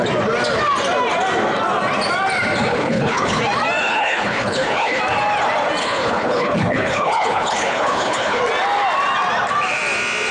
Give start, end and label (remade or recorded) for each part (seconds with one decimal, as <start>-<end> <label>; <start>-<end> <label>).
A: 0.0-2.7 recorded; 2.7-3.4 remade; 3.4-3.8 recorded; 3.8-5.0 remade; 5.0-5.8 recorded; 5.8-8.4 remade; 8.4-10.3 recorded